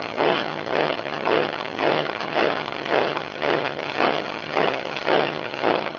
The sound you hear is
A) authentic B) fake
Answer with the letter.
B